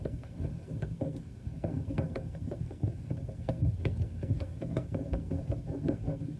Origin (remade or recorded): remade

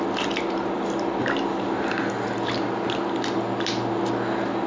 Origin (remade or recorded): recorded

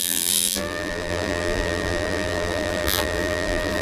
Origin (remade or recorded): remade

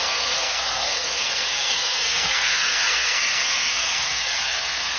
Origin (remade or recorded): remade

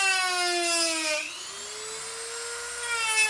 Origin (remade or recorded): recorded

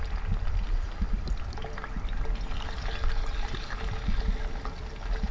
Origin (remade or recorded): recorded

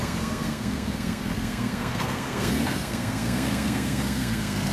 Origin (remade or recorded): remade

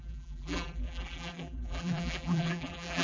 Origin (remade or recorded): remade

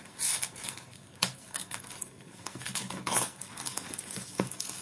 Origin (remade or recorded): remade